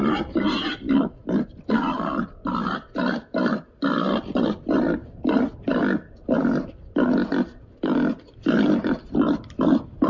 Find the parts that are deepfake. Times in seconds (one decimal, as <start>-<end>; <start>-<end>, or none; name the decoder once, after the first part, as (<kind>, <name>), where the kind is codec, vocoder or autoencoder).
none